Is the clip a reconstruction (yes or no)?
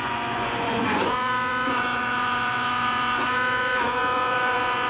yes